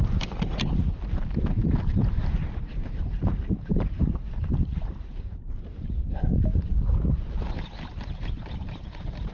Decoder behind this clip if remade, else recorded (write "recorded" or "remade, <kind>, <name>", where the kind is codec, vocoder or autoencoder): remade, vocoder, BigVGAN v2